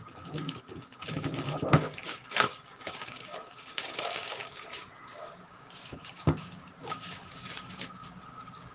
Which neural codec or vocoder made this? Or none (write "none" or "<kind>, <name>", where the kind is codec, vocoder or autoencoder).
codec, DAC